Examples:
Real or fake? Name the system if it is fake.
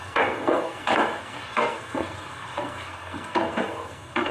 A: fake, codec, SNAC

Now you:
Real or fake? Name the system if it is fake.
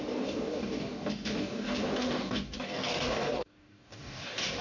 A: fake, codec, DAC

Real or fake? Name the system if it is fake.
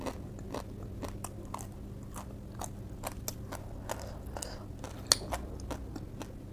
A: real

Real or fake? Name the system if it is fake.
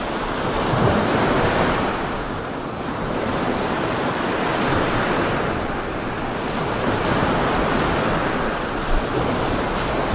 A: real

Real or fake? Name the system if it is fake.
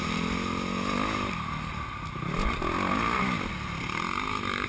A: real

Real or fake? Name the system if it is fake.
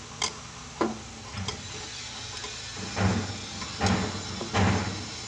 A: real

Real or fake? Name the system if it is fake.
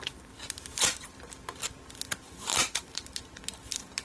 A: real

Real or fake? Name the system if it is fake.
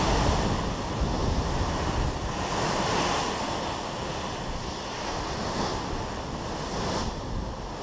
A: real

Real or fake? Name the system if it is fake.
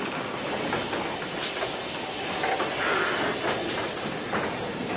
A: real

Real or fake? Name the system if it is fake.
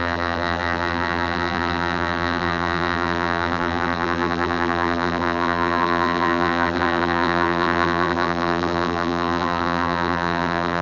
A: fake, vocoder, BigVGAN v2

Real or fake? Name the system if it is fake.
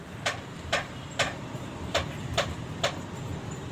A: real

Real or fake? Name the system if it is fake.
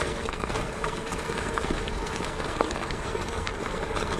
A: fake, codec, SNAC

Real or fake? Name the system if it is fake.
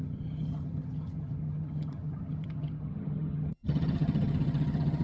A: fake, vocoder, HiFi-GAN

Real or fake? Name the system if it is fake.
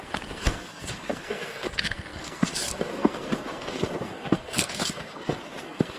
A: fake, codec, SNAC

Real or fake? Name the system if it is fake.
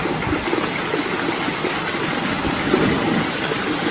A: real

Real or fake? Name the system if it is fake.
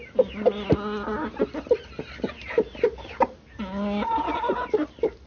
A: real